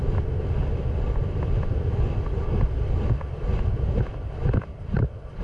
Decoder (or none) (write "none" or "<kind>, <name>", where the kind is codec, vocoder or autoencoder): none